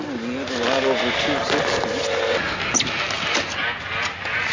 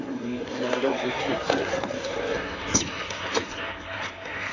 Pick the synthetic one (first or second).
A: second